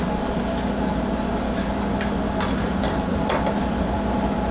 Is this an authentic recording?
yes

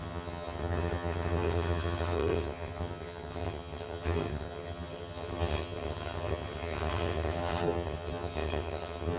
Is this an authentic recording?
no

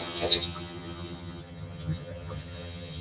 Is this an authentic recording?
no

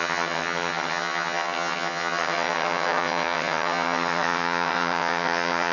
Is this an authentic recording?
no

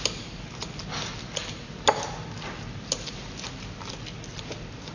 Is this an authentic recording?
yes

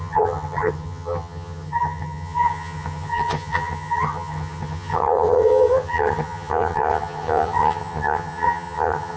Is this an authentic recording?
no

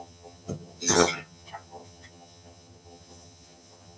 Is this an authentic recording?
no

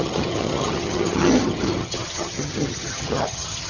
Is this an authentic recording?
no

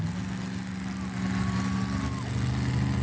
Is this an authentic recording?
yes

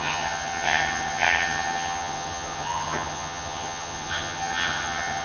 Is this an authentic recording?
no